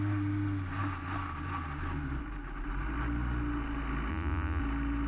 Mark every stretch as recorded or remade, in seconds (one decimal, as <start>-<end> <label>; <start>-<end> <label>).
0.0-4.1 recorded; 4.1-4.6 remade; 4.6-5.1 recorded